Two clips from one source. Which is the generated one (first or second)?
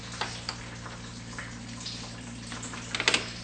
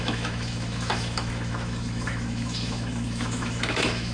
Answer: second